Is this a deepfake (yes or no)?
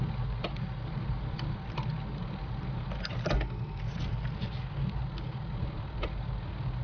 no